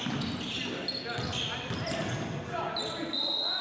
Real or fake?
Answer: real